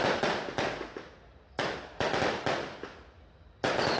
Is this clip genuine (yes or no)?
yes